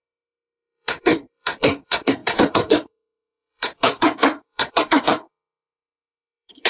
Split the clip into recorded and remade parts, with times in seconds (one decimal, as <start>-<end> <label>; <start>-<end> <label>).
0.0-6.7 remade